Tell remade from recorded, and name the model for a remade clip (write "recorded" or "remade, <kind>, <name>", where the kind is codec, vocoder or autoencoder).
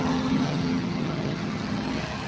remade, vocoder, HiFi-GAN